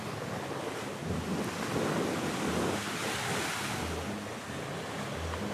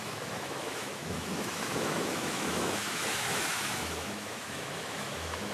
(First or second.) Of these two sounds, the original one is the first